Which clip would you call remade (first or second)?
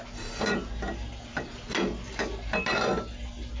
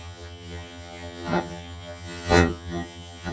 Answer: second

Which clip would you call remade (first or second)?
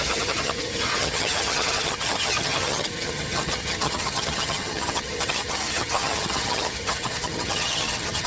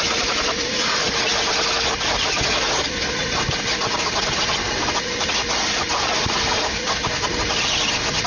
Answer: first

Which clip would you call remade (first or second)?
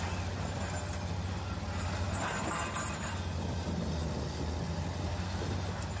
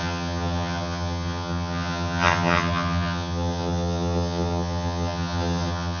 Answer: second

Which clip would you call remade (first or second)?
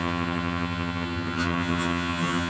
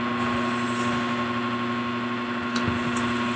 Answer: first